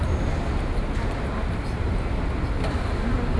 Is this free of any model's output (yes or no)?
yes